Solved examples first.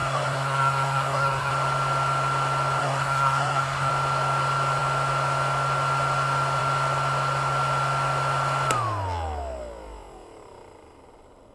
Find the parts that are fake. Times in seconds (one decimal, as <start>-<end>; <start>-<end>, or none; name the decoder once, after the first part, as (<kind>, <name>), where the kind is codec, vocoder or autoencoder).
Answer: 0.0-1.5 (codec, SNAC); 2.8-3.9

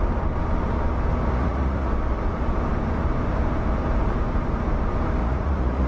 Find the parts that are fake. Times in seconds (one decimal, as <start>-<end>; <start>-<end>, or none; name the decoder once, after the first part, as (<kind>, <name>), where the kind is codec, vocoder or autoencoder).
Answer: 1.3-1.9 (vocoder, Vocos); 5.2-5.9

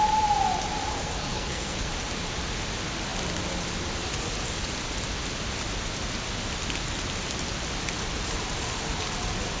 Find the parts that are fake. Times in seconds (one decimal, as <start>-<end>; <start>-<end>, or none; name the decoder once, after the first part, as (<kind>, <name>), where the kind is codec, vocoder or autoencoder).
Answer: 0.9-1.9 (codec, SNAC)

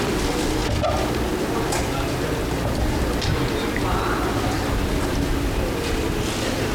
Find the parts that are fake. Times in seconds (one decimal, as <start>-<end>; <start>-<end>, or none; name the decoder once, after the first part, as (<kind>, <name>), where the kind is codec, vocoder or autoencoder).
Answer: 1.3-5.3 (vocoder, BigVGAN v2)